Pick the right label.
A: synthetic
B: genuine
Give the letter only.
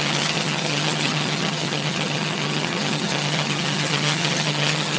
A